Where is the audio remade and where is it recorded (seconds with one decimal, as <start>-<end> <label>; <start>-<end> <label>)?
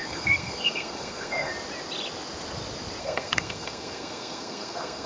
0.0-1.5 remade; 1.5-3.0 recorded; 3.0-5.1 remade